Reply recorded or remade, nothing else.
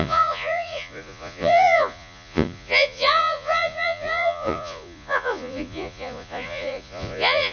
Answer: remade